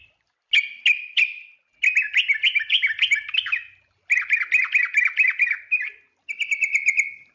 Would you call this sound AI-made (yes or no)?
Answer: no